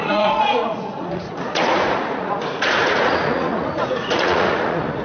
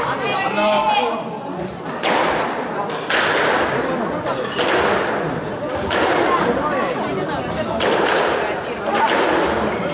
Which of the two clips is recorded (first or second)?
second